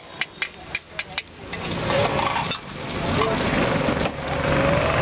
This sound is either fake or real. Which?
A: real